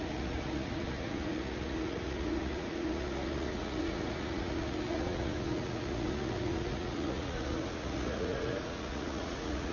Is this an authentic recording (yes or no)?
no